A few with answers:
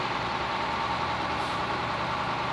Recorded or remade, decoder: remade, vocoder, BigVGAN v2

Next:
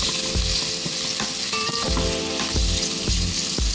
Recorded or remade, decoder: recorded